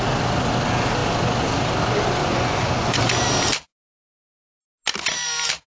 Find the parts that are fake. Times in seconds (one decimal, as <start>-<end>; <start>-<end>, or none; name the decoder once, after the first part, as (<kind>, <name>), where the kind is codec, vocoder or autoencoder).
2.2-3.0 (vocoder, Vocos)